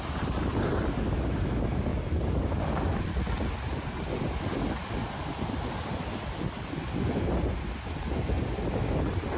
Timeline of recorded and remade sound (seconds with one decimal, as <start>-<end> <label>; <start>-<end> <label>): 0.0-1.9 recorded; 1.9-6.9 remade; 6.9-9.4 recorded